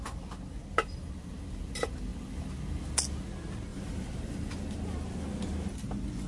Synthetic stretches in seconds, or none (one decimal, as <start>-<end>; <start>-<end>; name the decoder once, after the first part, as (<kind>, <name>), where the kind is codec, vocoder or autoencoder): 3.7-4.5 (vocoder, BigVGAN v2)